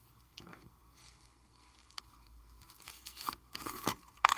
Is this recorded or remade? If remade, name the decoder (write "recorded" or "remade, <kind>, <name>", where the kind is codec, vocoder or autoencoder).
remade, codec, SNAC